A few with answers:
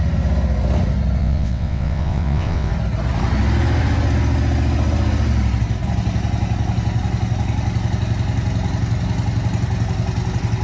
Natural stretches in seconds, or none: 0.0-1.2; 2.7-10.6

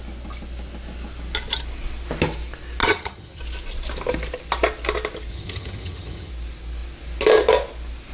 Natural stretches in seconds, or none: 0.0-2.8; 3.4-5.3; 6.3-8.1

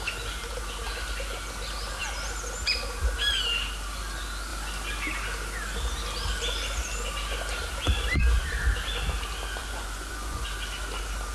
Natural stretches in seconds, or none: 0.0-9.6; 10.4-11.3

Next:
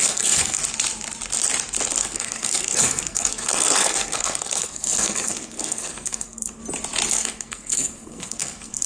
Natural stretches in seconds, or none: 0.6-2.0; 6.6-7.1

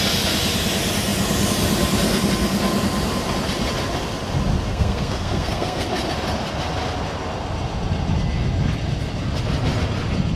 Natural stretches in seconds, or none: 0.0-4.7; 5.9-10.4

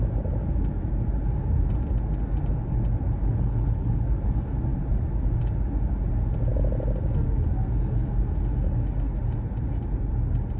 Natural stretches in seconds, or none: 0.0-3.2; 4.0-10.6